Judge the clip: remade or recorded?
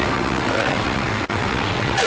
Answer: remade